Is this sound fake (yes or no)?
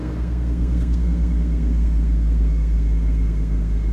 yes